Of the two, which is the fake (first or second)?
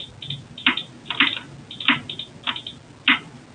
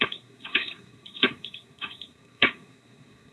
second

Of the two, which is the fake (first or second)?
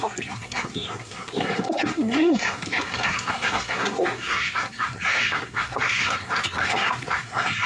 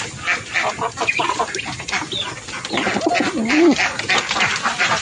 first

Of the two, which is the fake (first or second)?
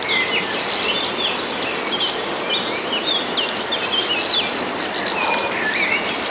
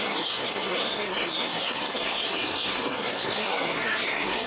second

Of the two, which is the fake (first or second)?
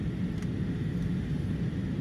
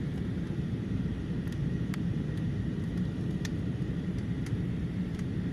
second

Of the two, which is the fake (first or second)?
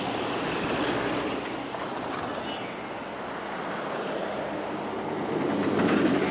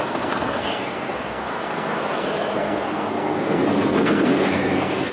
second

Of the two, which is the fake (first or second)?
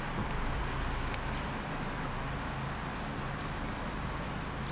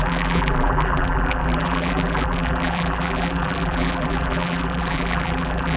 second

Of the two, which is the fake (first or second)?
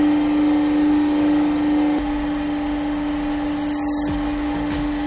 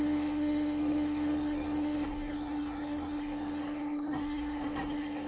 second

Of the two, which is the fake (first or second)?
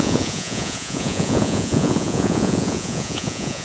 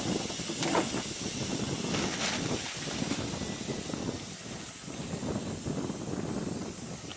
first